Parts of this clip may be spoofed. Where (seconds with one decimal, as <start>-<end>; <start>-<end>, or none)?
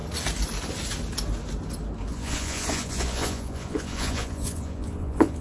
2.1-5.4